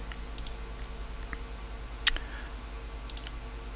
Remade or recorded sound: recorded